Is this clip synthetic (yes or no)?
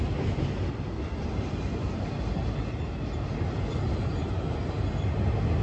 no